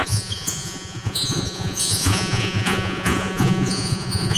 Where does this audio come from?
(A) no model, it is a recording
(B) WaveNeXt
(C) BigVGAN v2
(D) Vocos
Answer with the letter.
D